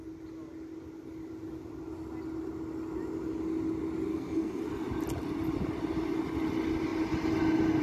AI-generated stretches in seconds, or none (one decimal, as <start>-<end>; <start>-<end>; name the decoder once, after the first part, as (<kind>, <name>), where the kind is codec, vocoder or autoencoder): 4.1-4.6 (codec, SNAC)